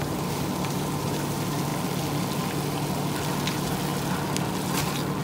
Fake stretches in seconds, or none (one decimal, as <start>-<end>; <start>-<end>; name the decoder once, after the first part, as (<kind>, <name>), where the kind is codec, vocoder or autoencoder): none